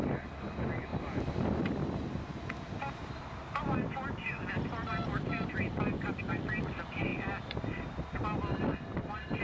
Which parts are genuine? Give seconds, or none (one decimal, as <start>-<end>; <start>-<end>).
0.0-9.4